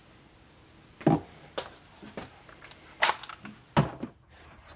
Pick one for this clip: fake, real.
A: real